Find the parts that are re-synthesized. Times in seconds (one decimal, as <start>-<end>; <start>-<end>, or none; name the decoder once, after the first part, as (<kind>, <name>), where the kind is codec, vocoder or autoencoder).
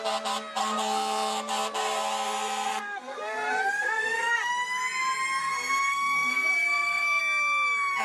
0.6-1.5 (codec, SNAC); 2.7-4.5; 5.4-7.2